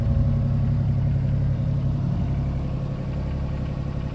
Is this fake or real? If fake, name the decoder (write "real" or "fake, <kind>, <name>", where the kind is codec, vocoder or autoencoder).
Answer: fake, vocoder, BigVGAN v2